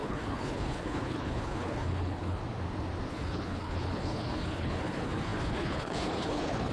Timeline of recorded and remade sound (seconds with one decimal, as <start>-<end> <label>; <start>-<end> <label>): 0.0-2.4 remade; 2.4-3.1 recorded; 3.1-6.7 remade